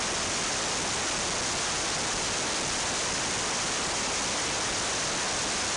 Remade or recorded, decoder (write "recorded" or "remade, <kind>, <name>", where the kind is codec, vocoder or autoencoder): recorded